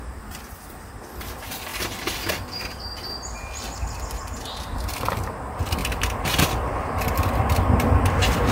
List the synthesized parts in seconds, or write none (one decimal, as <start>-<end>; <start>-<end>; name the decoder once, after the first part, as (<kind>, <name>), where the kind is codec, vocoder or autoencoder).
0.0-1.7 (vocoder, BigVGAN v2); 4.9-8.5